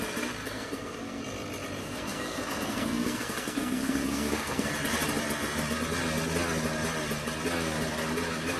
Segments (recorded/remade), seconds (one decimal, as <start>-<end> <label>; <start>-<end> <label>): 0.0-0.4 recorded; 0.4-1.2 remade; 1.2-1.8 recorded; 1.8-4.7 remade; 4.7-8.6 recorded